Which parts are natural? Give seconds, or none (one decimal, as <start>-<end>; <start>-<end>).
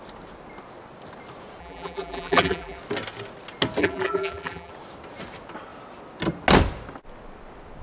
0.0-1.6; 2.8-3.8; 4.7-7.8